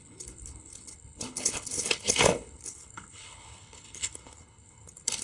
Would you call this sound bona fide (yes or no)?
no